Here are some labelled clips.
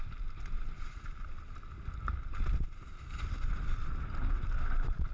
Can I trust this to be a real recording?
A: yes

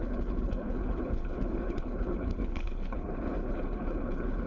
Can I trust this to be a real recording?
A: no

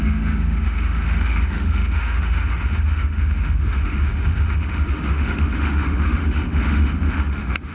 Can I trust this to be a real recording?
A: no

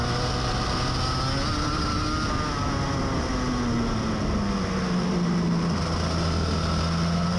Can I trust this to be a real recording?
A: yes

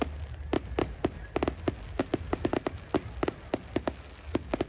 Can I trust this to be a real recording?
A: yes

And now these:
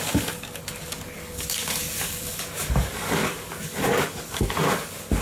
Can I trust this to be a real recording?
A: no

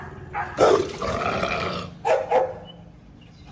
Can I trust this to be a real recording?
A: yes